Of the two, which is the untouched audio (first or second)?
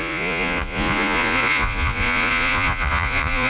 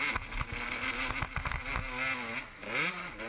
second